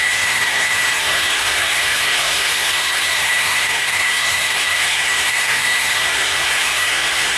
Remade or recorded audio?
remade